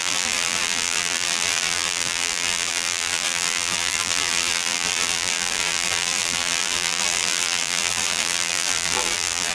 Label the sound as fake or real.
fake